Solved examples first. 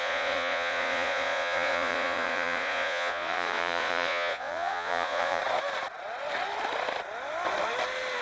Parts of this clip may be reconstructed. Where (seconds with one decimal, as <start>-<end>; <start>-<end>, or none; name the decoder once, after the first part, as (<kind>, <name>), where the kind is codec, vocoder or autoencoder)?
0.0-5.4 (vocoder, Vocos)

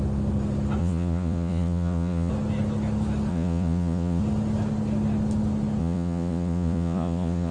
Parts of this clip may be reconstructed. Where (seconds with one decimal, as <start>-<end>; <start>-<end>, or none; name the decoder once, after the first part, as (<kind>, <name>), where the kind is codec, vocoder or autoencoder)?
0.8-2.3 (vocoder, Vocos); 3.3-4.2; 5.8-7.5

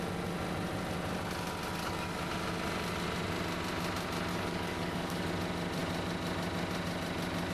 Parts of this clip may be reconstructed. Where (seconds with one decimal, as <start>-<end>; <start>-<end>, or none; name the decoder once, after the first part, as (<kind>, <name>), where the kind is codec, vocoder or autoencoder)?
1.8-2.3 (codec, DAC); 4.3-5.3

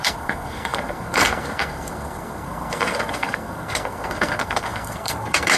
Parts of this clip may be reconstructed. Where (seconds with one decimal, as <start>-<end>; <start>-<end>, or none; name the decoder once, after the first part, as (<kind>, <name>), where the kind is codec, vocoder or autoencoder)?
0.0-5.6 (codec, SNAC)

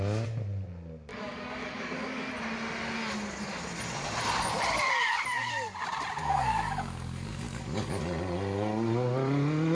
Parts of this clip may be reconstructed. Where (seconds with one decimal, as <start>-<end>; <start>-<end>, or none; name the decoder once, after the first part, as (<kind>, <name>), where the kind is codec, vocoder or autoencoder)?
1.1-2.3 (codec, DAC); 6.2-8.0